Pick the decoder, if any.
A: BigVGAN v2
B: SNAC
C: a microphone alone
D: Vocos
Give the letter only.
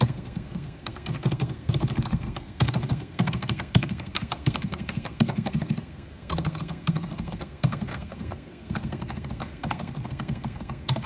B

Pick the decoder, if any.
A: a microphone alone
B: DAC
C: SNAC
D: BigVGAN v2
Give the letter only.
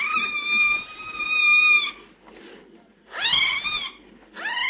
A